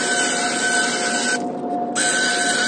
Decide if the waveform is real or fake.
real